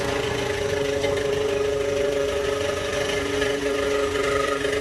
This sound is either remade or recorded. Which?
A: remade